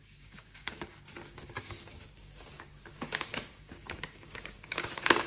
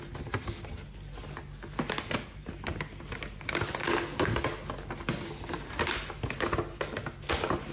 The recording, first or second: second